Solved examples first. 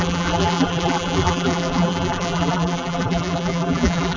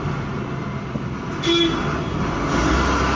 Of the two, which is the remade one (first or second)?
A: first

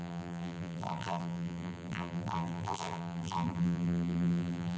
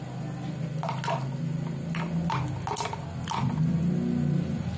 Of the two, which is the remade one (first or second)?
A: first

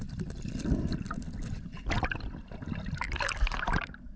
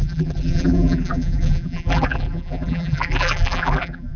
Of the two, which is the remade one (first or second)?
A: second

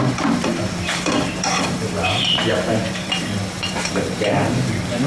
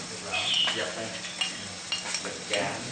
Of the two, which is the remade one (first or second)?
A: first